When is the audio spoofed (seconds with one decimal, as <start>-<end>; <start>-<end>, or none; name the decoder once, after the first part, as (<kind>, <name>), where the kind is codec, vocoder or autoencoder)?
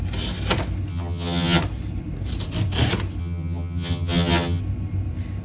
0.9-1.6 (vocoder, HiFi-GAN); 3.2-4.6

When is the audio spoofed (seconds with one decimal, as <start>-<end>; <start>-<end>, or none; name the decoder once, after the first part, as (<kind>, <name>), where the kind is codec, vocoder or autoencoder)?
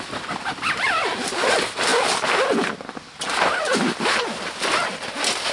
none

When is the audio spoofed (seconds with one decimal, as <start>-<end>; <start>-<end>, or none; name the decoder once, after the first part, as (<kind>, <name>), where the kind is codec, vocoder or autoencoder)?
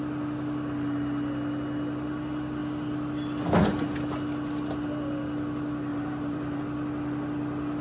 5.9-6.6 (vocoder, BigVGAN v2)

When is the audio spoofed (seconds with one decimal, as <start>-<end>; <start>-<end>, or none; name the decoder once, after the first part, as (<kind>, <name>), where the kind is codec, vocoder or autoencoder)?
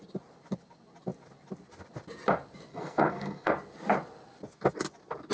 2.7-3.5 (codec, SNAC)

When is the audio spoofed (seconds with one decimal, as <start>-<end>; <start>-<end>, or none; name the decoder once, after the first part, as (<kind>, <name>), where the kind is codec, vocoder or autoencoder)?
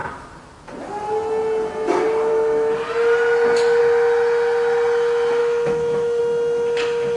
5.4-6.2 (autoencoder, DAC-VAE)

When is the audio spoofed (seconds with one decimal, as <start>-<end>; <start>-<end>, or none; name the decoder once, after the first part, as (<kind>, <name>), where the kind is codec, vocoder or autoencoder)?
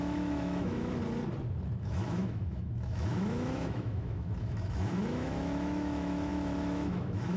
0.0-1.0 (autoencoder, DAC-VAE); 1.8-7.4